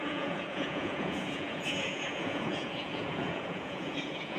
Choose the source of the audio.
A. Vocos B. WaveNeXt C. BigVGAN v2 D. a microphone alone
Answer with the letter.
A